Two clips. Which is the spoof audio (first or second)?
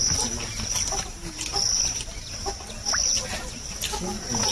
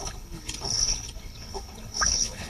second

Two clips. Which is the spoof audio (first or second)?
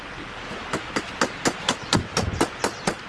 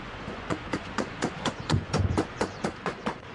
second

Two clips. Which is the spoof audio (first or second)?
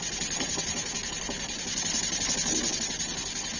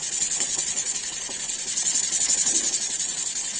second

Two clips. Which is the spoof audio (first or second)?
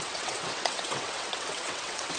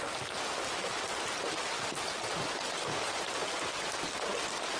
first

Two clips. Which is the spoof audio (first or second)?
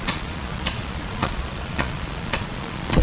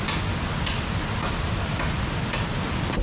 first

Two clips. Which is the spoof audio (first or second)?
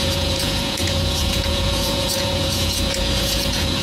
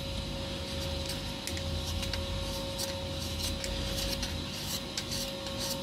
first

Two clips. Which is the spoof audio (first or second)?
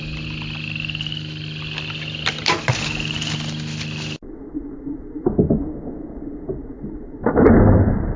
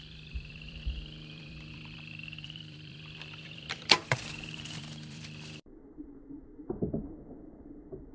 second